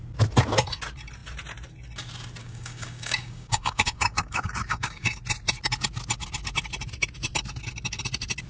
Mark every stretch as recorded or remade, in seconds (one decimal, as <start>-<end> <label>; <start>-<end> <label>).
0.0-2.4 recorded; 2.4-5.2 remade; 5.2-8.5 recorded